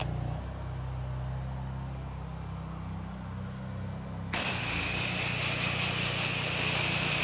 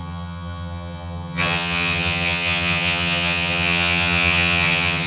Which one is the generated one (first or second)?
second